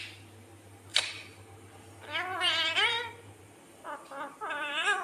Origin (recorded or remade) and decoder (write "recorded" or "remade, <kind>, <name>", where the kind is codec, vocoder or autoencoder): remade, vocoder, BigVGAN v2